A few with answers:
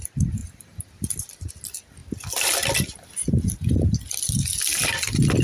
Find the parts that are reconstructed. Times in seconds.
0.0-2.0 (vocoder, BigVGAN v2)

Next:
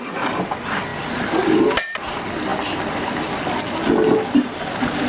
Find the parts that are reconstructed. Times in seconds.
0.9-2.1 (vocoder, BigVGAN v2)

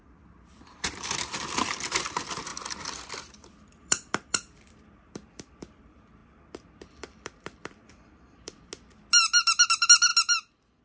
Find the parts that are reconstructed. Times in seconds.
0.0-6.2 (vocoder, BigVGAN v2); 6.9-8.7; 9.7-10.1

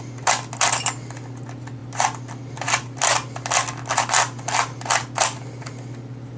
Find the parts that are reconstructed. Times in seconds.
none